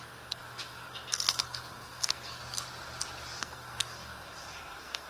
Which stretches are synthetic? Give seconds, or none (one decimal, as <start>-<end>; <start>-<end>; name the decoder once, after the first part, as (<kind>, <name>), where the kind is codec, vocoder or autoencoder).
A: 0.0-2.4 (codec, SNAC); 3.4-5.1